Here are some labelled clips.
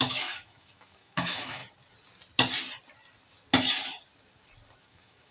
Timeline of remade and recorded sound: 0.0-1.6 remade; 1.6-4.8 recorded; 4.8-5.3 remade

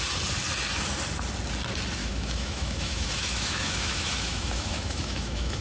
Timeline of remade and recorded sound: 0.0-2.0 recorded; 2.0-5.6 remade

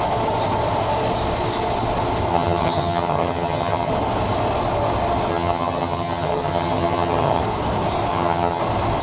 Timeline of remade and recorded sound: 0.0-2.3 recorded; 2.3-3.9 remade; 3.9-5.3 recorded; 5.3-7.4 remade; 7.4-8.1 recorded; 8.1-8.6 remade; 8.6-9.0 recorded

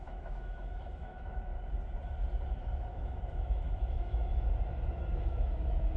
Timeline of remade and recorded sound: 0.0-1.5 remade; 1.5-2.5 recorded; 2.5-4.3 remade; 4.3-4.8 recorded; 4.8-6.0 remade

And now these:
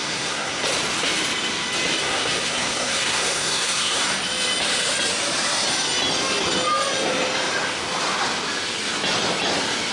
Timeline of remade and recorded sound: 0.0-0.6 remade; 0.6-2.0 recorded; 2.0-4.0 remade; 4.0-9.9 recorded

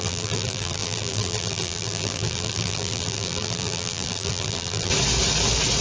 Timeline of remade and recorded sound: 0.0-4.9 remade; 4.9-5.8 recorded